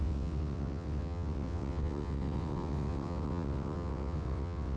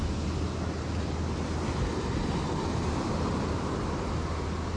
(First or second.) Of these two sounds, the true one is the second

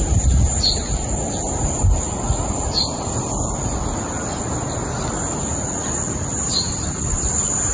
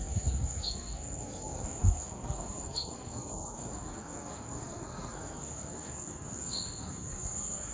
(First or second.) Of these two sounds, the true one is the first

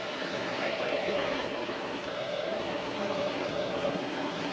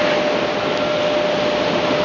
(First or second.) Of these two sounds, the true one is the second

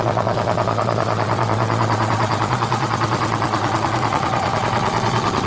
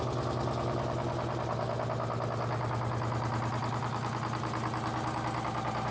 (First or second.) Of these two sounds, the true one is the second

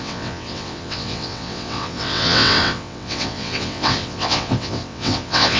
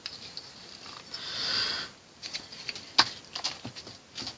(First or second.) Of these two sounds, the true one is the second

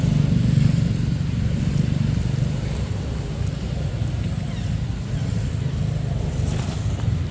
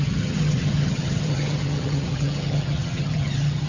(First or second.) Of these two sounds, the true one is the first